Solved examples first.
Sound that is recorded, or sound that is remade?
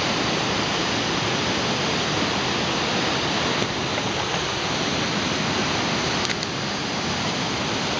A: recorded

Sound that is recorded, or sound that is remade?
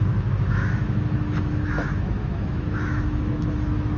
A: remade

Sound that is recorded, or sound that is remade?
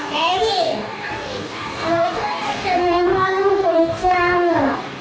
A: remade